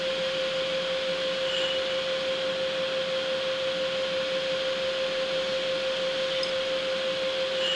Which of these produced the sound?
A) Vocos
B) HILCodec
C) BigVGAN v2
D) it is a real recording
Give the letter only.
D